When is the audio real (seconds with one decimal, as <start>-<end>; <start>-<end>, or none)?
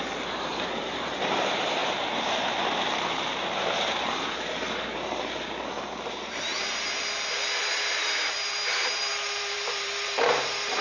6.5-7.6